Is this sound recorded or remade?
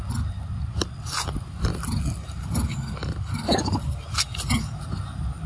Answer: recorded